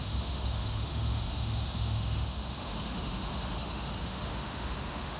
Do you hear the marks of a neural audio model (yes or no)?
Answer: yes